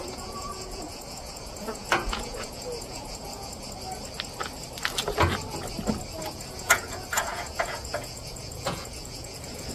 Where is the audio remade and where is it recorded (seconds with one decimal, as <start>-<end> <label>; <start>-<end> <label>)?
0.0-3.5 remade; 3.5-6.3 recorded; 6.3-9.7 remade